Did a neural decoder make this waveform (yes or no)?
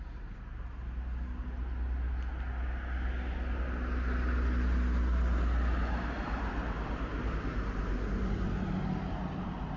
no